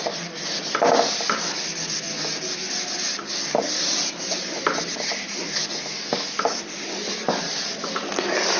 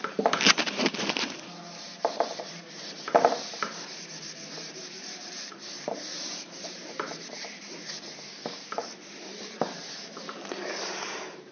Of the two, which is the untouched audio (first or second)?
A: first